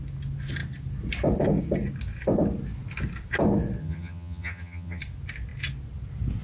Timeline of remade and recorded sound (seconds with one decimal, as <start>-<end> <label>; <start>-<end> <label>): 0.0-3.8 recorded; 3.8-5.0 remade; 5.0-6.4 recorded